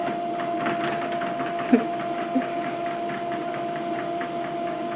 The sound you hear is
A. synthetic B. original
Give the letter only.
B